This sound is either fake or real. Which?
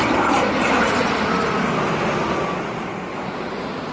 real